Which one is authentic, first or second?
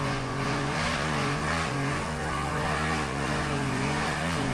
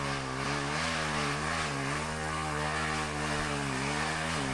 second